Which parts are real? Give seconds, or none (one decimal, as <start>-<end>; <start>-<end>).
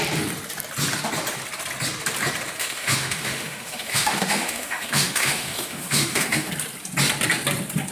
0.0-2.6; 6.5-7.9